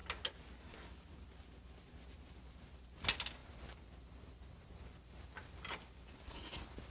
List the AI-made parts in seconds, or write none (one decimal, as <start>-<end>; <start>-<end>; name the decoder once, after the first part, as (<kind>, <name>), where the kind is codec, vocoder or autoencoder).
3.4-4.7 (vocoder, BigVGAN v2)